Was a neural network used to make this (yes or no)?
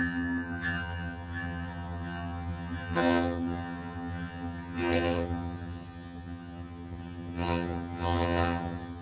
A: yes